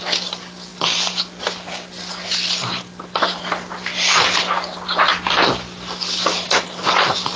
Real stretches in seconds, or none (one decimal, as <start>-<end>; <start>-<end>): 0.0-0.7; 3.4-5.1